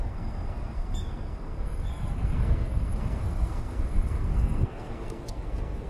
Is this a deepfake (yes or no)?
yes